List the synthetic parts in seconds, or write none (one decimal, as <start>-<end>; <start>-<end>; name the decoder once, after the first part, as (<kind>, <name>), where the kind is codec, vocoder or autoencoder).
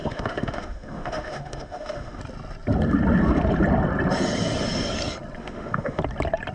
0.0-2.2 (autoencoder, DAC-VAE); 5.4-6.0